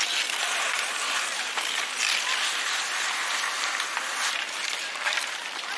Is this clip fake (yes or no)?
no